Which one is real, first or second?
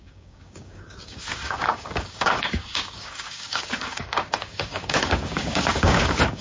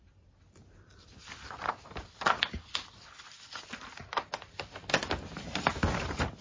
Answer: second